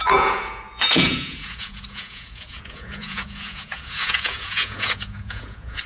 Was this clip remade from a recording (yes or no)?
yes